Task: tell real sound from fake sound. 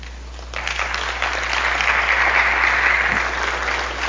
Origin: real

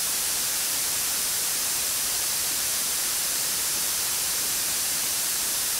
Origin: fake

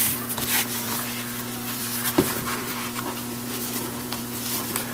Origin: fake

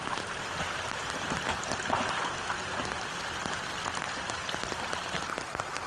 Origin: real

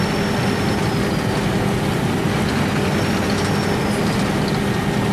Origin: real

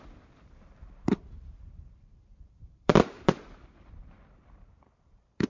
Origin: fake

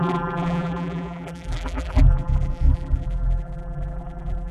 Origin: fake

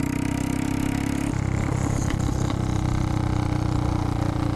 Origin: fake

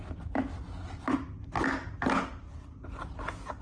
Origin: real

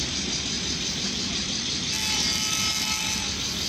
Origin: real